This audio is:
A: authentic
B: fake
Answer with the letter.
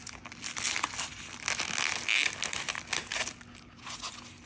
A